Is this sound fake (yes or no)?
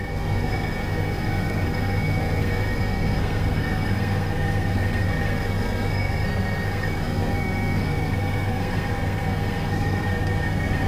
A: yes